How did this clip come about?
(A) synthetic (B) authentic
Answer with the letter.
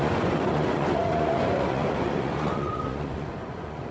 A